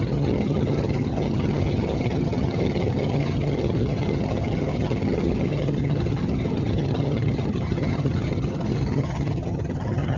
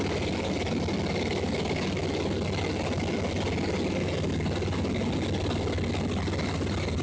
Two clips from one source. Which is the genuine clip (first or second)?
second